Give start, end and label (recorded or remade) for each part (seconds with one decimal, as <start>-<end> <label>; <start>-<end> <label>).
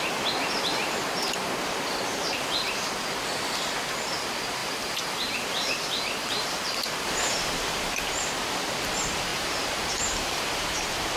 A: 0.0-0.8 recorded; 0.8-1.5 remade; 1.5-4.6 recorded; 4.6-7.7 remade; 7.7-9.3 recorded; 9.3-11.2 remade